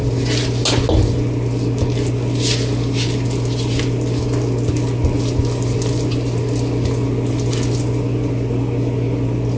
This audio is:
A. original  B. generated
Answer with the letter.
A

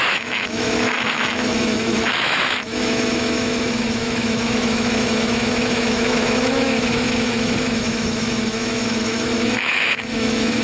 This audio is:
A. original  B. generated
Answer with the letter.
B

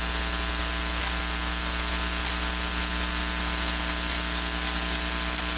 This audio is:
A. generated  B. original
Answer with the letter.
B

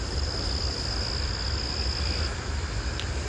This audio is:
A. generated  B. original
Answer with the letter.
B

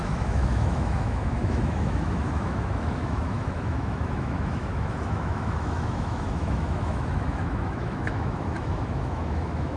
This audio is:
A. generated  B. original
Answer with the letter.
A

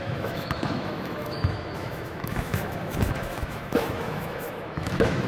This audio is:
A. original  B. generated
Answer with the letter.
B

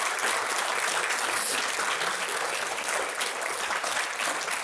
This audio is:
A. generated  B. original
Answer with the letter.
B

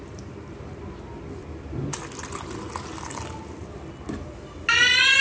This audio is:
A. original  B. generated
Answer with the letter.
A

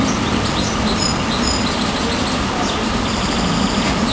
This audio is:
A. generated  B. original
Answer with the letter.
B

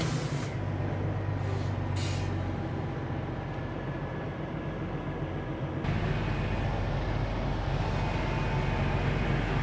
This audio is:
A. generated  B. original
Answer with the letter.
B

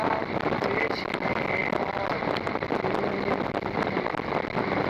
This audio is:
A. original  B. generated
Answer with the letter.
A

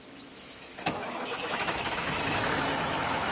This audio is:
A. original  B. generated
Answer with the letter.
B